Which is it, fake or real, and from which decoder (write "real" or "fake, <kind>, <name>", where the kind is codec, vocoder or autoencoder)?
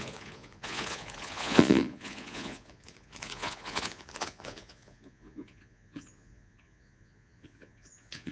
fake, vocoder, Vocos